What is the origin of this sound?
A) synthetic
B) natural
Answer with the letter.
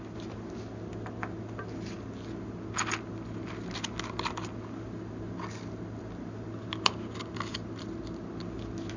B